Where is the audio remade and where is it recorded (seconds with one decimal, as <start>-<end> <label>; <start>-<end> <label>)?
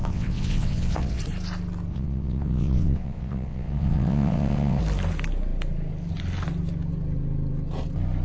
0.0-1.2 remade; 1.2-1.9 recorded; 1.9-4.8 remade; 4.8-8.2 recorded